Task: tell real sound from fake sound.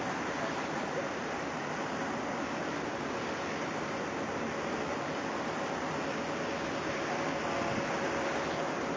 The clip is real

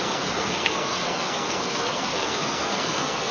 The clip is fake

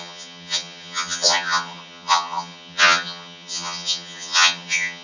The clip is fake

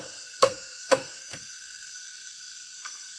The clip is fake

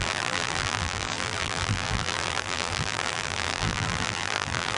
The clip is fake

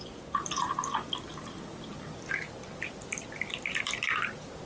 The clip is real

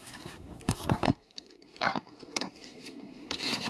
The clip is fake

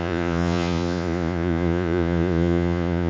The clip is fake